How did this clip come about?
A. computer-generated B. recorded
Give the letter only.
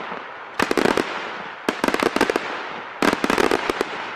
B